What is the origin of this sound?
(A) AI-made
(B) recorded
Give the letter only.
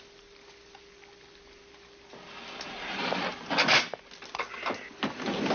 B